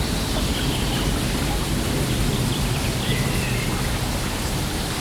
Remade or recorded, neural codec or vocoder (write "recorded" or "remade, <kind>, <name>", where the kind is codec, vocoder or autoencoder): recorded